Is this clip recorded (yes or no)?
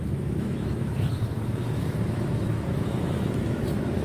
no